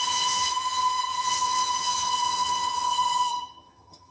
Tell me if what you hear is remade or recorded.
remade